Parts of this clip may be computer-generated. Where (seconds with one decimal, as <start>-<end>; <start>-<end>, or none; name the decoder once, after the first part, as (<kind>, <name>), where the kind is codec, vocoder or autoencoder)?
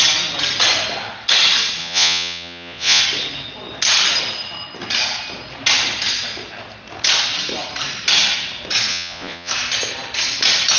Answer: 1.8-3.0 (vocoder, Vocos); 8.9-9.5